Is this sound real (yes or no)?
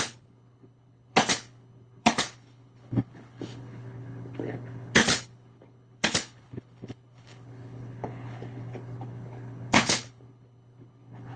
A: no